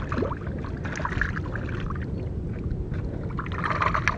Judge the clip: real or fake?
real